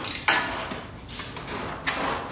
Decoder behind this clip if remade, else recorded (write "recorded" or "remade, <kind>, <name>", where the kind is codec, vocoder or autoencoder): recorded